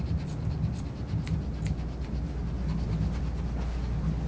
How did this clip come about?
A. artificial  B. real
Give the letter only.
B